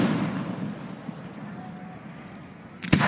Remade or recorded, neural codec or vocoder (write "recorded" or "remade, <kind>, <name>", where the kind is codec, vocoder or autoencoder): recorded